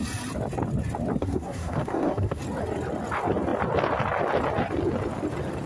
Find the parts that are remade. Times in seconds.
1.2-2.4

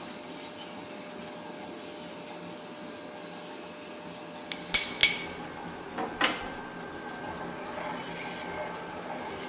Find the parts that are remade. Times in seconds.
none

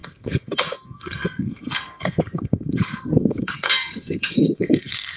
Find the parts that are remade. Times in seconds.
0.0-5.2